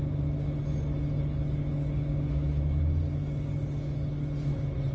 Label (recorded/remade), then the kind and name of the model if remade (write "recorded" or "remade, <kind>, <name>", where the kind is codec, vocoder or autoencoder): recorded